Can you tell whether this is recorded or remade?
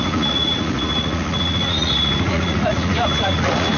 remade